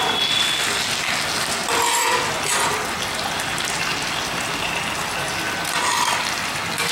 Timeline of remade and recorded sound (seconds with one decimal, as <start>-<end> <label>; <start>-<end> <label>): 0.0-6.9 recorded